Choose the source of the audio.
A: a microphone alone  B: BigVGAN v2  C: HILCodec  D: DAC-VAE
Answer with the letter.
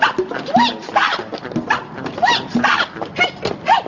A